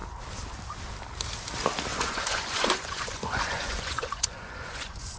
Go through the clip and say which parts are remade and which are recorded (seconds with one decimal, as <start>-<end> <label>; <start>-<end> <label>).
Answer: 0.0-1.9 recorded; 1.9-5.2 remade

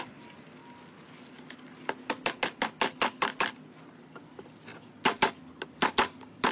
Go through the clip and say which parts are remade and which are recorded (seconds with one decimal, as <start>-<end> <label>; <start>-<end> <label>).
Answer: 0.0-6.5 recorded

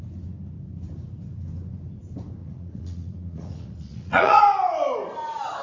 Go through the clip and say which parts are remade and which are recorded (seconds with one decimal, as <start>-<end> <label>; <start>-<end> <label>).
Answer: 0.0-2.4 recorded; 2.4-4.4 remade; 4.4-5.6 recorded